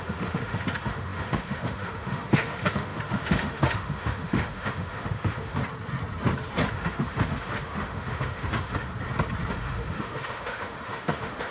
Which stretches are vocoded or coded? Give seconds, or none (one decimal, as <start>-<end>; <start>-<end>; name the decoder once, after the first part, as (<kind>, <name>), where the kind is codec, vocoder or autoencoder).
0.0-5.6 (autoencoder, DAC-VAE); 6.7-8.9; 9.5-11.5